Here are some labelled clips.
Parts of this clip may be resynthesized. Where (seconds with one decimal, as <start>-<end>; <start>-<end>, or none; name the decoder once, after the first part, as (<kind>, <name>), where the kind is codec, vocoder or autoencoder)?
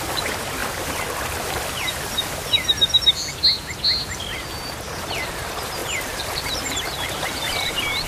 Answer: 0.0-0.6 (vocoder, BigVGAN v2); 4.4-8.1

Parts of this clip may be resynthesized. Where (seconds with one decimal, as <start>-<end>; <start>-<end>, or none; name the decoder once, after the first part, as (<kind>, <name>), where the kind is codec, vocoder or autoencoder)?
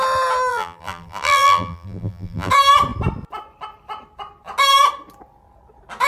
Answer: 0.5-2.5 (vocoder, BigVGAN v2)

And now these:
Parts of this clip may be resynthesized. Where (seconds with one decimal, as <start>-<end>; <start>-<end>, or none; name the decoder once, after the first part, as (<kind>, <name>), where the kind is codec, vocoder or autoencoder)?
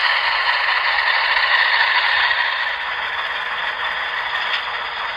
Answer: 0.0-3.1 (vocoder, BigVGAN v2)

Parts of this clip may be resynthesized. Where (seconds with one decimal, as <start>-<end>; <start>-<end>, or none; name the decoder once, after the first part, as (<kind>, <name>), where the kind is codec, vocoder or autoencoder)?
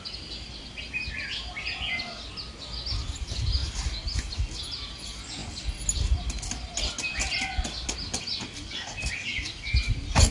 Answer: 3.6-4.2 (vocoder, BigVGAN v2)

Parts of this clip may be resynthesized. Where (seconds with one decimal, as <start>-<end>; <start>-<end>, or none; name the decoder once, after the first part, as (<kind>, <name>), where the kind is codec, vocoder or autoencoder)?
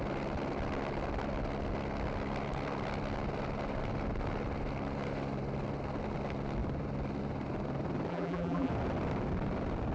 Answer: 8.1-8.7 (vocoder, BigVGAN v2)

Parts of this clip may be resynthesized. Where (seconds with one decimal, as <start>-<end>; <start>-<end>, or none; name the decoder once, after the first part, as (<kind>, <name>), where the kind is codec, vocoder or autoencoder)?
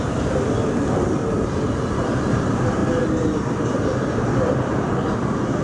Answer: 0.0-1.2 (vocoder, BigVGAN v2); 1.9-5.6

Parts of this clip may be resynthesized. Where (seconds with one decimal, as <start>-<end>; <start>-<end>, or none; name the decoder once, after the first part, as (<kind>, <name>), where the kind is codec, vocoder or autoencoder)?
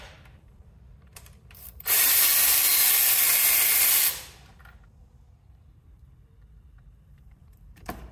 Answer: 0.0-2.3 (vocoder, BigVGAN v2); 5.8-8.1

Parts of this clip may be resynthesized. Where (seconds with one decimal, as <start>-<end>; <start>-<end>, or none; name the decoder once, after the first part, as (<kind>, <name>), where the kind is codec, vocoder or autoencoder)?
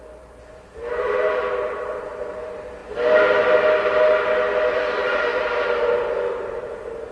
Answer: 0.0-2.8 (vocoder, BigVGAN v2); 4.7-5.3; 6.3-7.1